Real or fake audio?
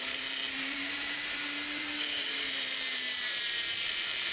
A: fake